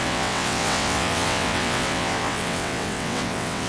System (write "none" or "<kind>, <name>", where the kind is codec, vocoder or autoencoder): vocoder, WaveNeXt